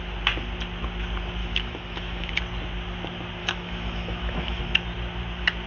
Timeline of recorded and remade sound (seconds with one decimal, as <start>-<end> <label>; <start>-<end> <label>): 0.0-1.4 recorded; 1.4-2.3 remade; 2.3-3.4 recorded; 3.4-4.6 remade; 4.6-5.7 recorded